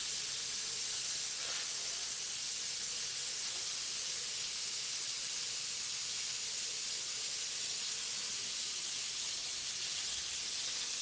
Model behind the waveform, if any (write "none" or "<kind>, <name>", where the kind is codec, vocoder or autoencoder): none